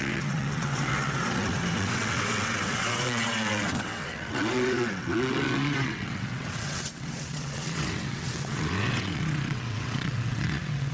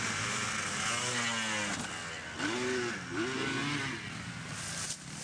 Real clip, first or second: second